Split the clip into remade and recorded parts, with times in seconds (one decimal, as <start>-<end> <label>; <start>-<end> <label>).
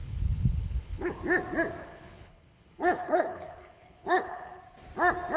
0.0-1.2 remade; 1.2-1.8 recorded; 1.8-4.6 remade; 4.6-5.4 recorded